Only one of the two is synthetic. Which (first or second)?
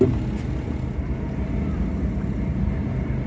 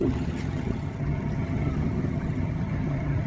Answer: second